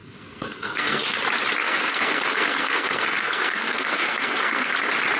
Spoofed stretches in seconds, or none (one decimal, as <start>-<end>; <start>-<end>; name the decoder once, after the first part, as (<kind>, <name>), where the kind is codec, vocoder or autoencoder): 0.0-1.1 (codec, SNAC); 1.6-4.7